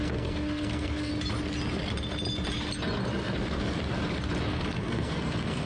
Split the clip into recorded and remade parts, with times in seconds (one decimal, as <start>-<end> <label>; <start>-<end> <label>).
0.0-1.1 remade; 1.1-4.5 recorded; 4.5-5.7 remade